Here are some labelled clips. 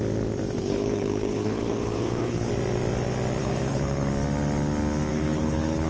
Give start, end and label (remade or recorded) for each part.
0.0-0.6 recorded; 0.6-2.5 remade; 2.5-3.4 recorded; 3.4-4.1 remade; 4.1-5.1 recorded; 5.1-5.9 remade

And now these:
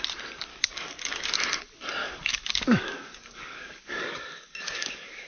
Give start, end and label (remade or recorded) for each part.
0.0-0.5 recorded; 0.5-1.3 remade; 1.3-2.0 recorded; 2.0-5.3 remade

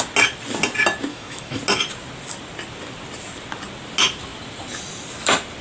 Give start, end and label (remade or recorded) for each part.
0.0-1.1 recorded; 1.1-1.6 remade; 1.6-5.6 recorded

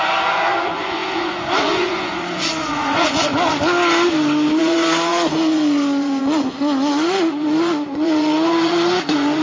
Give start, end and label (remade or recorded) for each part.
0.0-3.3 remade; 3.3-4.6 recorded; 4.6-9.4 remade

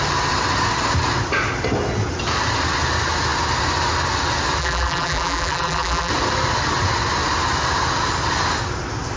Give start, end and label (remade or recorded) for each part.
0.0-4.6 recorded; 4.6-6.1 remade; 6.1-9.2 recorded

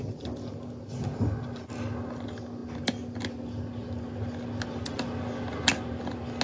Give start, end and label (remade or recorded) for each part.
0.0-6.4 recorded

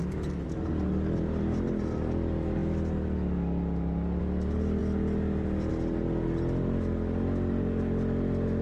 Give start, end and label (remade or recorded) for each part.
0.0-8.6 recorded

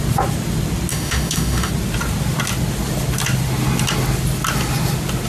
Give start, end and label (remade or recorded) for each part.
0.0-0.9 recorded; 0.9-1.7 remade; 1.7-5.3 recorded